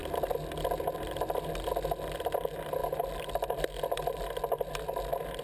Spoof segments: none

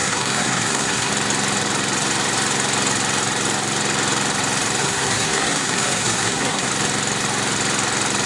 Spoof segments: 0.0-1.1 (codec, SNAC); 4.8-6.7